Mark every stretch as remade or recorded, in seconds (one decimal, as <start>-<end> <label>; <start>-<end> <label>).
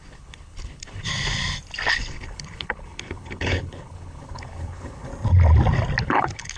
0.0-1.1 remade; 1.1-1.9 recorded; 1.9-5.1 remade; 5.1-6.0 recorded; 6.0-6.6 remade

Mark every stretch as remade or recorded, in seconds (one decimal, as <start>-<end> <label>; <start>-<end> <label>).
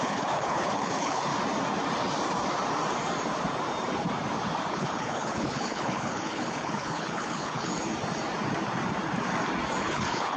0.0-1.3 remade; 1.3-4.7 recorded; 4.7-7.7 remade; 7.7-9.8 recorded; 9.8-10.4 remade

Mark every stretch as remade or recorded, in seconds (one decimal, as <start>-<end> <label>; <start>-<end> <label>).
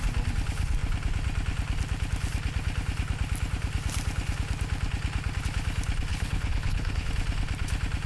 0.0-6.1 recorded; 6.1-7.1 remade; 7.1-8.1 recorded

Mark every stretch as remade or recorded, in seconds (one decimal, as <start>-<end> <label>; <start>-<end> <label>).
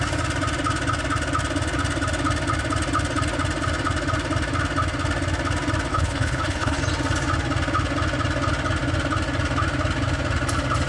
0.0-5.9 recorded; 5.9-6.8 remade; 6.8-10.9 recorded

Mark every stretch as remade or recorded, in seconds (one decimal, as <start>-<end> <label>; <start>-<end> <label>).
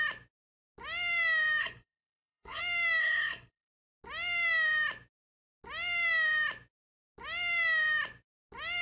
0.0-1.6 recorded; 1.6-2.6 remade; 2.6-3.0 recorded; 3.0-3.7 remade; 3.7-8.8 recorded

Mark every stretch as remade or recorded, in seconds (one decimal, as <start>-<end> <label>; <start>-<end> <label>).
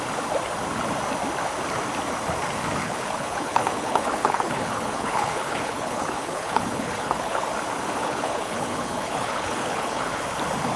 0.0-2.8 recorded; 2.8-7.5 remade; 7.5-8.0 recorded; 8.0-10.2 remade; 10.2-10.8 recorded